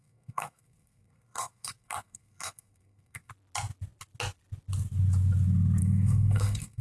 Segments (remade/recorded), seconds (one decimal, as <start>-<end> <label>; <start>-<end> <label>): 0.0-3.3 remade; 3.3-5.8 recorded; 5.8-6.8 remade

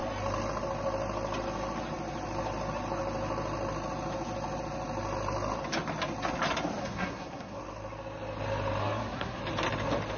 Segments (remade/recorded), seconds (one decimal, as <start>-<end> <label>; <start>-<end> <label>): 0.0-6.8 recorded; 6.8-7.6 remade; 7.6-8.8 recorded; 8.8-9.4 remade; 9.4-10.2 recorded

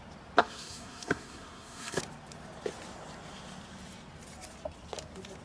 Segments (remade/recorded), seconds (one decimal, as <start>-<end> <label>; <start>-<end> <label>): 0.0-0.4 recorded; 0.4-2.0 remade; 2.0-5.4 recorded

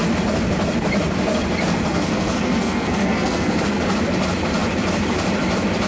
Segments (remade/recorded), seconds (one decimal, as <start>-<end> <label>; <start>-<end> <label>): 0.0-1.9 recorded; 1.9-3.6 remade; 3.6-5.9 recorded